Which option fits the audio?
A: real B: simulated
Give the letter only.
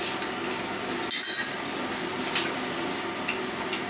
A